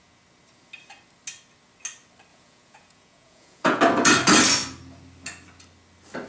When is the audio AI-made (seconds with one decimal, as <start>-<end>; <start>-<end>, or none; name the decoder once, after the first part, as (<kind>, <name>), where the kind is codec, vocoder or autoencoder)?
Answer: 2.3-3.8 (vocoder, Vocos)